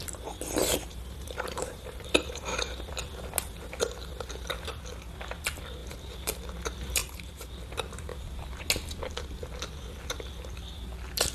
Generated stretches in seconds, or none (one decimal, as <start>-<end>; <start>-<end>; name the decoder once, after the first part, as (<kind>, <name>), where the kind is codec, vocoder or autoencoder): 0.7-2.4 (vocoder, BigVGAN v2); 5.8-6.4; 7.0-7.5; 8.1-8.6